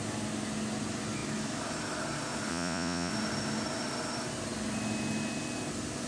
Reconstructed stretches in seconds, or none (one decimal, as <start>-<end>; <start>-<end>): 2.5-3.1